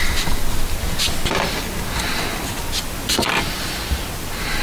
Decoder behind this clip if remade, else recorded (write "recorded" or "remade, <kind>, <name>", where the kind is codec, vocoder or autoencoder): recorded